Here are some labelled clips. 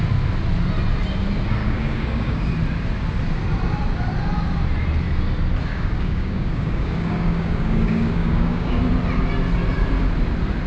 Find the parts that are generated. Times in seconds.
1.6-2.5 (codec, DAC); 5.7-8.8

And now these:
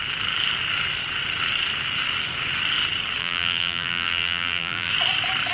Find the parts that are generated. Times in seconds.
3.2-4.9 (vocoder, BigVGAN v2)